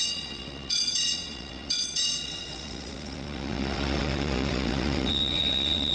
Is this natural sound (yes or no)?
no